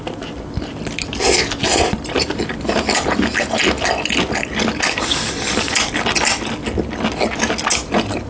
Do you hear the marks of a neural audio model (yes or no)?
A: no